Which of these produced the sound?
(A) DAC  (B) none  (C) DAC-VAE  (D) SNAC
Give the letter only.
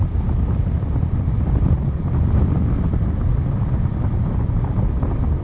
B